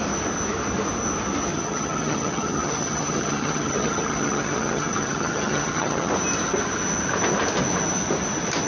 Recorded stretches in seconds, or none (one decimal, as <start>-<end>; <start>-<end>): 0.0-1.5; 6.1-8.7